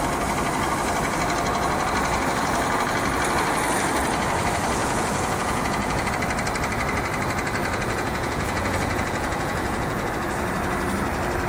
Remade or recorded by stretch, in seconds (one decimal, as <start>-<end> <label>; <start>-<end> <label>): 0.0-4.8 recorded; 4.8-6.1 remade; 6.1-7.6 recorded; 7.6-10.1 remade; 10.1-11.5 recorded